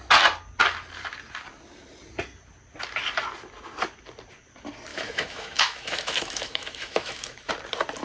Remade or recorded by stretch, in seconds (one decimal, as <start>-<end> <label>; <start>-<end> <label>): 0.0-4.9 recorded; 4.9-7.5 remade; 7.5-8.0 recorded